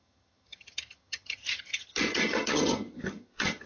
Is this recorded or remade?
remade